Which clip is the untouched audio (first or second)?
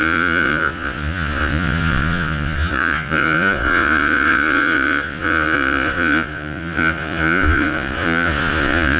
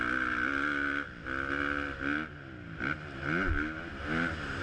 second